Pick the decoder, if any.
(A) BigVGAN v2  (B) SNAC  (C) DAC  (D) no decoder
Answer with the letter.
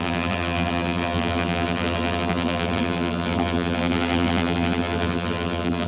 A